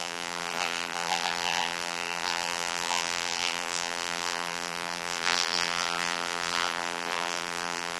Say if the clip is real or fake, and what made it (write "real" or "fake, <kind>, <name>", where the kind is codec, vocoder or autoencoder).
fake, vocoder, BigVGAN v2